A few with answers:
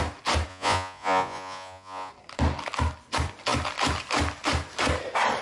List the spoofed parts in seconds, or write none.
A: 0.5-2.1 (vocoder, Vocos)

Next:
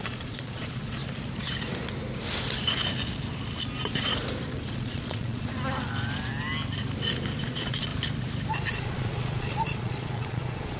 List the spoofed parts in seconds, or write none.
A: 0.0-1.0 (vocoder, Vocos); 4.5-5.5; 7.4-7.9; 8.7-10.8